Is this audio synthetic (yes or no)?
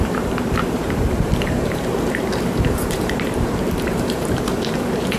yes